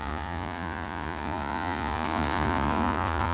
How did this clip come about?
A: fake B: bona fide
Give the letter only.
A